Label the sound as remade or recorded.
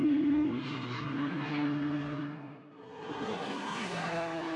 remade